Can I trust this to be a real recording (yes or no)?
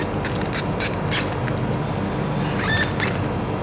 yes